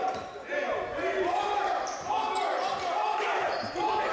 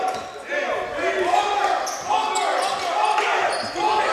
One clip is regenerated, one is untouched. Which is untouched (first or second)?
second